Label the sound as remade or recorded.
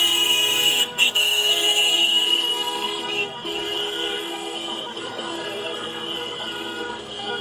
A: remade